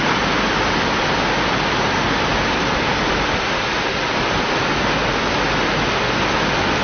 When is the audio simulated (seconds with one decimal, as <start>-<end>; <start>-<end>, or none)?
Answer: none